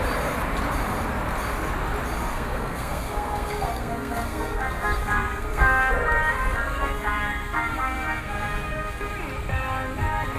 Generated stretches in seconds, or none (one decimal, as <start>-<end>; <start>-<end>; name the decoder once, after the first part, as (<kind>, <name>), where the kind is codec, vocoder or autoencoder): 2.3-5.9 (codec, SNAC); 6.5-9.1